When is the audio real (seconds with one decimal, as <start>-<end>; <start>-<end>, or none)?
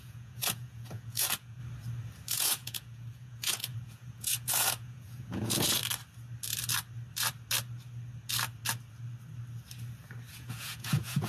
1.6-2.3; 5.8-10.3